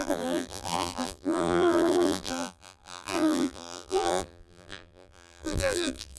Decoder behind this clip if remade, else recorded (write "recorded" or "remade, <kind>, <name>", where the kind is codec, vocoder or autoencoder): remade, vocoder, BigVGAN v2